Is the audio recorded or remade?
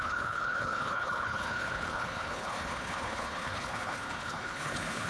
remade